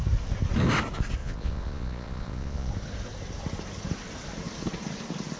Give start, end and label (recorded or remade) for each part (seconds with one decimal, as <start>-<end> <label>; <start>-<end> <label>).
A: 0.0-1.2 recorded; 1.2-2.7 remade; 2.7-5.4 recorded